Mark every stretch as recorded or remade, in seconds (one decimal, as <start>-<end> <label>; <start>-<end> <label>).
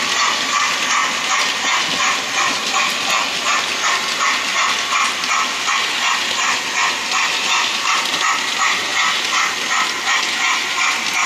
0.0-11.3 recorded